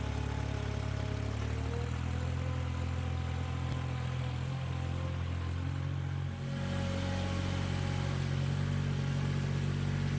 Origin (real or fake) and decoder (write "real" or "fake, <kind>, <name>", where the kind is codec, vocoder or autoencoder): real